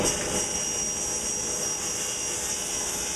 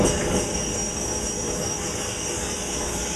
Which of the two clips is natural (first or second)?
first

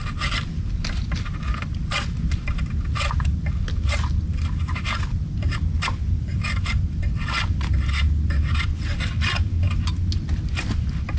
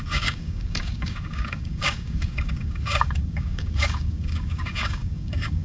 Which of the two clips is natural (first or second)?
first